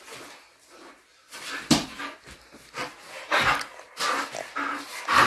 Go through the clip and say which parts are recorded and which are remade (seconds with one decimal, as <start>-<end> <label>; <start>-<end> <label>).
0.0-1.1 recorded; 1.1-4.3 remade; 4.3-5.3 recorded